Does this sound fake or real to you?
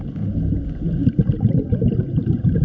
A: real